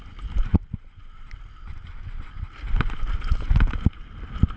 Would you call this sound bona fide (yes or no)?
yes